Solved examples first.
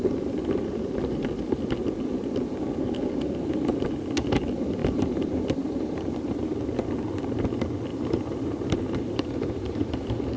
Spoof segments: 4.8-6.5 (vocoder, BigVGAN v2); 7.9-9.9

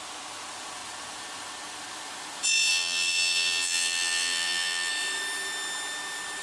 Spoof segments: 2.7-4.9 (vocoder, BigVGAN v2)